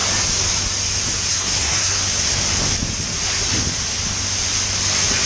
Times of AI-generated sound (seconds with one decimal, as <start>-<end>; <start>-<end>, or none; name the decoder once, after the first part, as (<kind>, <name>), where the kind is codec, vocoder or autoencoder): 1.3-2.0 (codec, SNAC)

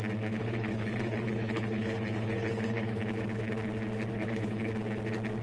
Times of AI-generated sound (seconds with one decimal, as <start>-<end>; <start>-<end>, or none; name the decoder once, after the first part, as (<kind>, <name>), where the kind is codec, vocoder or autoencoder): 0.4-3.0 (codec, HILCodec); 4.1-4.7

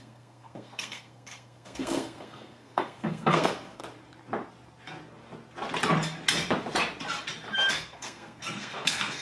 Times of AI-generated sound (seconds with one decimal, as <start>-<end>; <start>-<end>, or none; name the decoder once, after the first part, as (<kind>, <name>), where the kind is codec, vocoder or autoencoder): 0.0-3.8 (codec, SNAC); 7.7-9.2

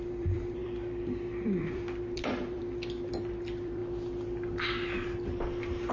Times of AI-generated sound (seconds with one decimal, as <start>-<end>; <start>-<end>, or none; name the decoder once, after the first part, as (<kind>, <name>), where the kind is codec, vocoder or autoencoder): 0.0-3.8 (vocoder, BigVGAN v2)

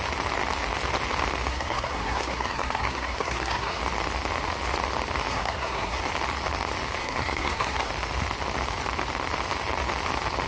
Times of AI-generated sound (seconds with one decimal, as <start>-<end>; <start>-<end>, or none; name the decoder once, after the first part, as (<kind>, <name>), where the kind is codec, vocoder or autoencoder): 1.5-3.8 (codec, SNAC); 5.3-6.0; 7.0-7.9